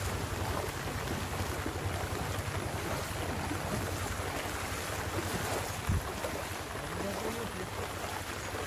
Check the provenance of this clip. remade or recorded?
recorded